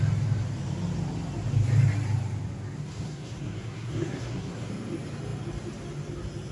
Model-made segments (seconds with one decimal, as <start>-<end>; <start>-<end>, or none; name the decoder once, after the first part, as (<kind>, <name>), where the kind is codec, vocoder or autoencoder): 2.8-4.7 (codec, SNAC)